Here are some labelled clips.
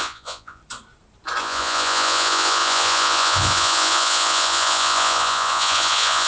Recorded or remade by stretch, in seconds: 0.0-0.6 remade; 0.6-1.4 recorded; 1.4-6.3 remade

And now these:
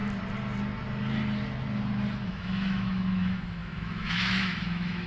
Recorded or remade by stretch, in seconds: 0.0-2.2 recorded; 2.2-5.1 remade

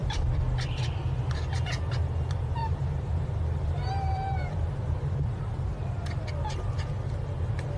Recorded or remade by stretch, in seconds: 0.0-2.6 recorded; 2.6-6.2 remade; 6.2-7.8 recorded

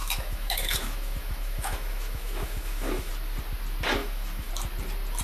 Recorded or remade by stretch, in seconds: 0.0-3.1 remade; 3.1-4.0 recorded; 4.0-4.5 remade; 4.5-5.2 recorded

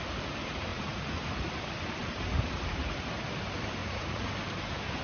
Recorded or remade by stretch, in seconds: 0.0-0.7 recorded; 0.7-1.2 remade; 1.2-3.8 recorded; 3.8-4.3 remade; 4.3-5.0 recorded

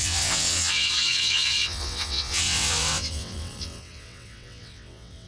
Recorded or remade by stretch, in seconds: 0.0-5.3 remade

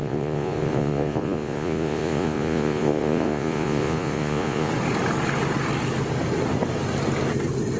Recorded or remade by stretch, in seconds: 0.0-4.7 remade; 4.7-7.8 recorded

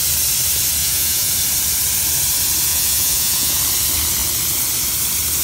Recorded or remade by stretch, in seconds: 0.0-0.8 recorded; 0.8-1.3 remade; 1.3-2.7 recorded; 2.7-3.6 remade; 3.6-5.4 recorded